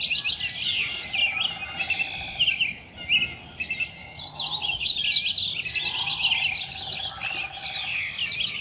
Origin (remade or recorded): recorded